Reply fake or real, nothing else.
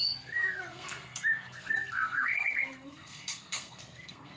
fake